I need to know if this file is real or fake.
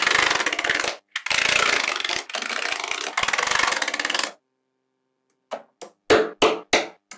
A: real